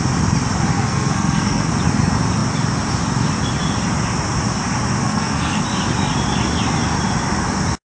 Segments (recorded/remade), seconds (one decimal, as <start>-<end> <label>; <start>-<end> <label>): 0.0-0.7 recorded; 0.7-1.7 remade; 1.7-5.0 recorded; 5.0-5.6 remade; 5.6-7.9 recorded

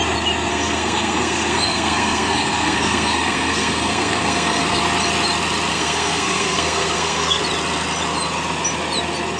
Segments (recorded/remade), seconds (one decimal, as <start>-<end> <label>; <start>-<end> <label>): 0.0-0.5 recorded; 0.5-4.8 remade; 4.8-5.7 recorded; 5.7-7.4 remade; 7.4-9.4 recorded

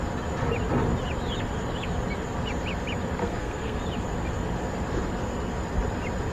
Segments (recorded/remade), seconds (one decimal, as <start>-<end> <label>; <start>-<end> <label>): 0.0-3.2 recorded; 3.2-3.8 remade; 3.8-6.3 recorded